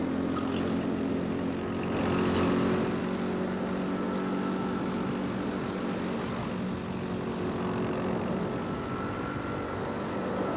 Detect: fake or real real